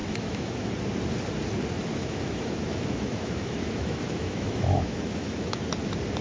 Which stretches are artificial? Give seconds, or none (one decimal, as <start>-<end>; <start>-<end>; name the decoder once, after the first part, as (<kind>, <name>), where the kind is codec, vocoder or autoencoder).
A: 0.0-0.7 (autoencoder, DAC-VAE); 2.0-5.6